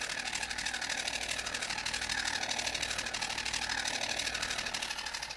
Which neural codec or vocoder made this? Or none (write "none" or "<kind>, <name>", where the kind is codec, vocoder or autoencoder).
none